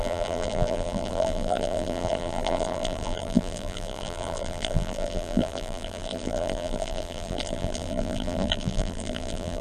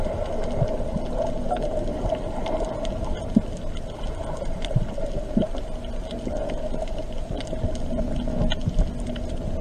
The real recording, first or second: second